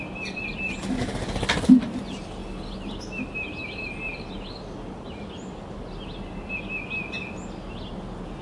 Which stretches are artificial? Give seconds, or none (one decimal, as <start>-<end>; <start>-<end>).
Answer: none

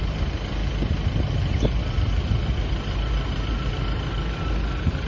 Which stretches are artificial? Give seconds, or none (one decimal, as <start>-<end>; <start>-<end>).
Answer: none

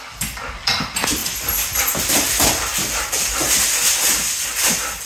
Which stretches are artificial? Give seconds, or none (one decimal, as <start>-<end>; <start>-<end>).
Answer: none

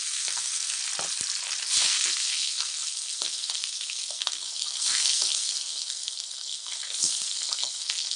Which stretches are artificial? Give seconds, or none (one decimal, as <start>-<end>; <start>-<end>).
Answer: 0.0-0.8; 1.8-8.2

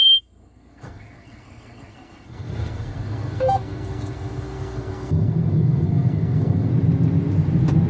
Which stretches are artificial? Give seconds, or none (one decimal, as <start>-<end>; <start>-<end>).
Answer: 0.0-6.7

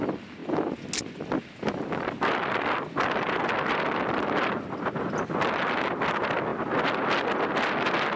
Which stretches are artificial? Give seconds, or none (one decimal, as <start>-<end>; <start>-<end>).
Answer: none

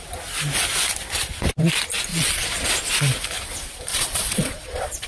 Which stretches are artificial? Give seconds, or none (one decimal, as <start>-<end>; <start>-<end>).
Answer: 2.1-2.7; 3.9-5.1

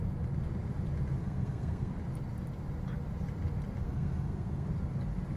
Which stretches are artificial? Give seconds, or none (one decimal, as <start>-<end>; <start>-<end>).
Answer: 1.2-1.9; 3.8-4.7